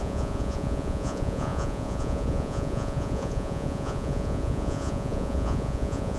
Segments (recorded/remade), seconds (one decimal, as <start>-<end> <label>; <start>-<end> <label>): 0.0-6.2 remade